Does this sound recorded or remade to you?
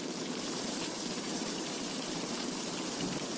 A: remade